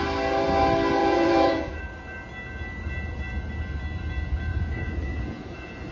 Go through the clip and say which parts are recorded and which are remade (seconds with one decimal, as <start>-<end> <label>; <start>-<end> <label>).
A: 0.0-1.0 recorded; 1.0-1.8 remade; 1.8-4.5 recorded; 4.5-5.9 remade